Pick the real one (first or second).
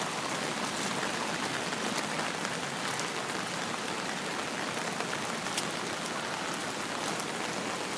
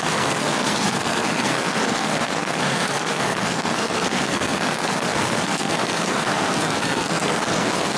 first